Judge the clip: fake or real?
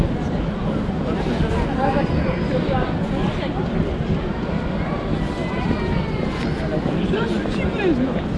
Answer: real